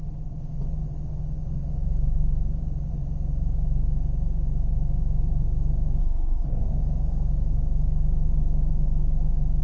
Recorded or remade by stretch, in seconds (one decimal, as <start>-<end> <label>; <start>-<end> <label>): 0.0-6.0 recorded; 6.0-6.6 remade; 6.6-9.6 recorded